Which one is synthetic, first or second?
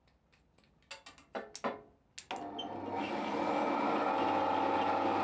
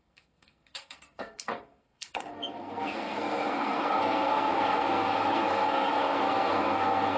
second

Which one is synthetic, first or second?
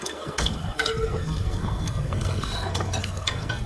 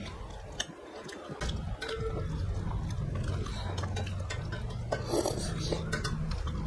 first